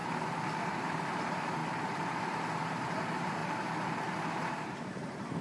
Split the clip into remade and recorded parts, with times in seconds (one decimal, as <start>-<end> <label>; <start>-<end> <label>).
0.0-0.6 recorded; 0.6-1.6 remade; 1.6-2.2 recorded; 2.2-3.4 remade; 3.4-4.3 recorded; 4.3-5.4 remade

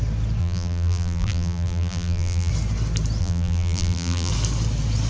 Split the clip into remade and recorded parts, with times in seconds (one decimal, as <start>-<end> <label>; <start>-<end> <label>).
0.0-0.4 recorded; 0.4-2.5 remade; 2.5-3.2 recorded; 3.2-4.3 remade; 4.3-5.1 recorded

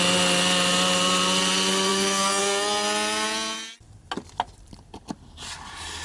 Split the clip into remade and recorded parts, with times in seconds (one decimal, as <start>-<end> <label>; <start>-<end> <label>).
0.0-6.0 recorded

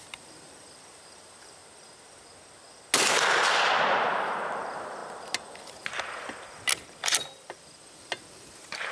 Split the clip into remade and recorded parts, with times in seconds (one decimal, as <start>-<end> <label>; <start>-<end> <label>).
0.0-1.6 remade; 1.6-3.5 recorded; 3.5-5.0 remade; 5.0-8.2 recorded; 8.2-8.9 remade